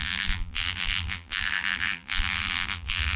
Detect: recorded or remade remade